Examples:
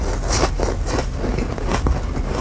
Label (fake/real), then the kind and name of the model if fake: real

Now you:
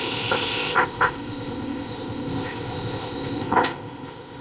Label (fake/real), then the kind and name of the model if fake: fake, codec, ZipCodec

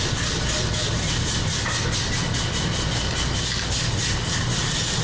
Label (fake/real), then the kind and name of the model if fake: real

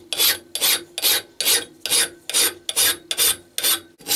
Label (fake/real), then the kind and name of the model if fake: real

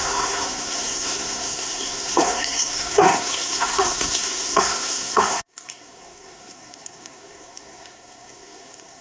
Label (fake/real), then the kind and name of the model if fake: fake, codec, SNAC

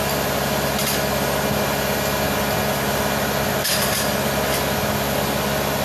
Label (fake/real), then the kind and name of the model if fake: real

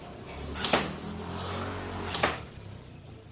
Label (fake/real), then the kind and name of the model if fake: real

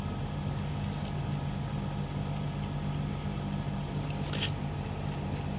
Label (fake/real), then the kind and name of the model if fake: real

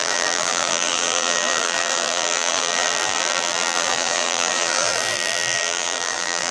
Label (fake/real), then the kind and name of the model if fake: fake, vocoder, BigVGAN v2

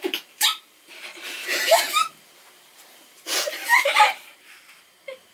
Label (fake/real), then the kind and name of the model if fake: fake, vocoder, BigVGAN v2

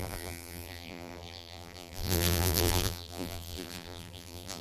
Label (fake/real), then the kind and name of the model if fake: fake, vocoder, BigVGAN v2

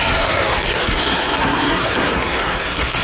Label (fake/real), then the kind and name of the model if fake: fake, codec, SNAC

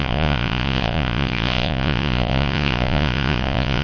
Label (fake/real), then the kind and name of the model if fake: fake, vocoder, Vocos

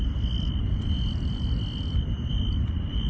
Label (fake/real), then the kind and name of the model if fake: real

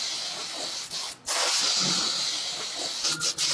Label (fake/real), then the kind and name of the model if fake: real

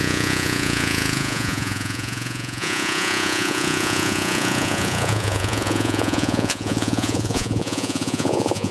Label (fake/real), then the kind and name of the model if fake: fake, vocoder, Vocos